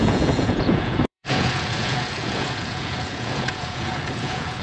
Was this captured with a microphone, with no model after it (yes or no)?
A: no